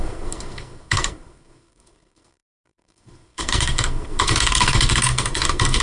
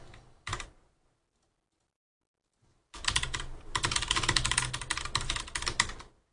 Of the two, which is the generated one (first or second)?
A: first